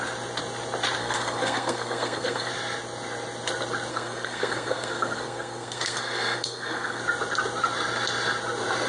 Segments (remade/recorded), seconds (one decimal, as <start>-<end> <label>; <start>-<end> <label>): 0.0-1.0 recorded; 1.0-2.5 remade; 2.5-3.9 recorded; 3.9-7.0 remade; 7.0-8.9 recorded